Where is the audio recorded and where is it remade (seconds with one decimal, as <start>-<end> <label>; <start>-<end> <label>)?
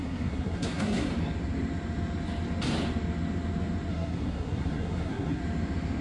0.0-1.1 remade; 1.1-3.9 recorded; 3.9-5.4 remade; 5.4-6.0 recorded